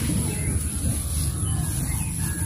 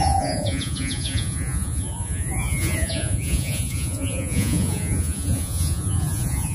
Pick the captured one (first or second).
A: first